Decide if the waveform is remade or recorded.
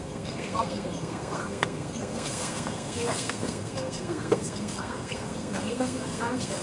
remade